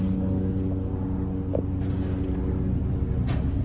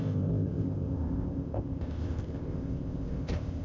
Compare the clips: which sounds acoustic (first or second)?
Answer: first